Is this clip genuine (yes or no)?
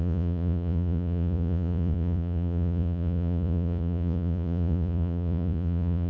no